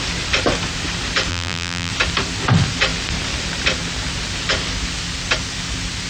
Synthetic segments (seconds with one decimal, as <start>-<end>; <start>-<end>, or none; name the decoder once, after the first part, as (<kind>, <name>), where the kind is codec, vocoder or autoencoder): 1.3-1.9 (vocoder, BigVGAN v2)